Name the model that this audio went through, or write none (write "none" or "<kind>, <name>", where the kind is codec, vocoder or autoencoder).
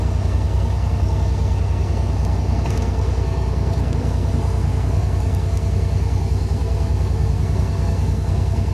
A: codec, SNAC